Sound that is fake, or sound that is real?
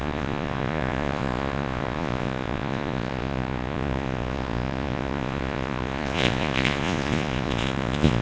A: fake